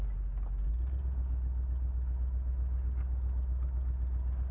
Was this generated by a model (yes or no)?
no